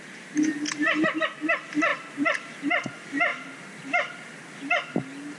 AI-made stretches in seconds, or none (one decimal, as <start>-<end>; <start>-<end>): 1.9-2.9